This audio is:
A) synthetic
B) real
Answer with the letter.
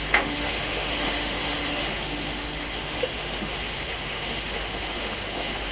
A